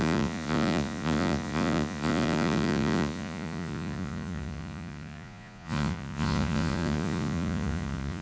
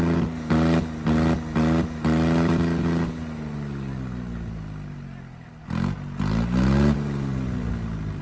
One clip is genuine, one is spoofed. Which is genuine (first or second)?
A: second